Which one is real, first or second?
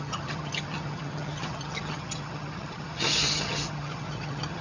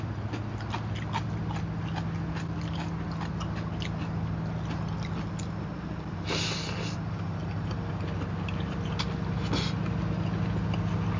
second